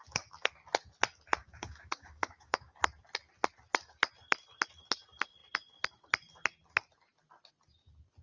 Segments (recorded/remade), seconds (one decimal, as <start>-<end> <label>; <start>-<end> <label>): 0.0-1.4 recorded; 1.4-2.8 remade; 2.8-8.2 recorded